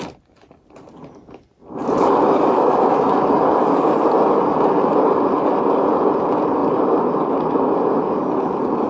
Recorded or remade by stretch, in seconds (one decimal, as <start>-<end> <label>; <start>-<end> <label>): 0.0-1.8 recorded; 1.8-2.6 remade; 2.6-8.9 recorded